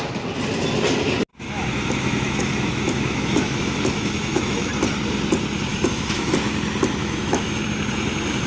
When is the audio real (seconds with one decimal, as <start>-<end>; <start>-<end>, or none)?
0.0-1.3; 4.7-5.7; 6.3-7.0; 7.6-8.5